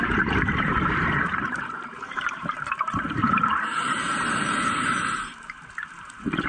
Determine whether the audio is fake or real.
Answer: fake